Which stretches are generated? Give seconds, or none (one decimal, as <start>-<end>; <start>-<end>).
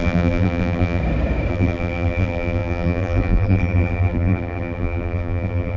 0.0-1.0; 1.5-5.8